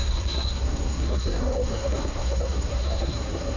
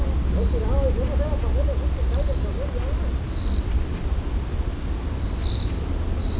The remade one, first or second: first